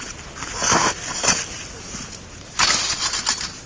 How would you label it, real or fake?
real